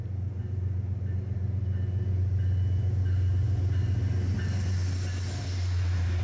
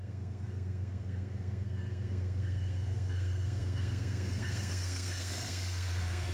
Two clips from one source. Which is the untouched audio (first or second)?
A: first